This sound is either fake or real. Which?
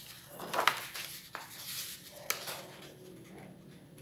real